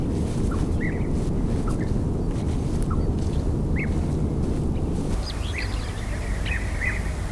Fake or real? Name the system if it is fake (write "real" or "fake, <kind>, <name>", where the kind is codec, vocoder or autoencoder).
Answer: real